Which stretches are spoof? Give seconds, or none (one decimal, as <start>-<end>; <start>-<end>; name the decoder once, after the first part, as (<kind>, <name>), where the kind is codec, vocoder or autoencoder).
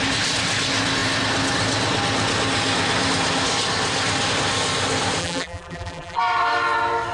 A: 5.2-6.2 (vocoder, BigVGAN v2)